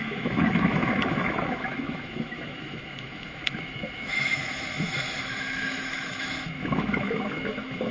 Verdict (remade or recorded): remade